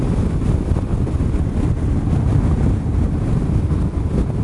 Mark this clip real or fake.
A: real